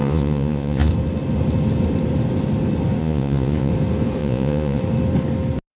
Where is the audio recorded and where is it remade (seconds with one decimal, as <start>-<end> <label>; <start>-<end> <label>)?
0.0-0.9 remade; 0.9-3.0 recorded; 3.0-3.7 remade; 3.7-4.2 recorded; 4.2-4.8 remade; 4.8-5.8 recorded